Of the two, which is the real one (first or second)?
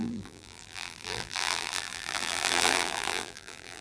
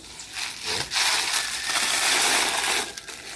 second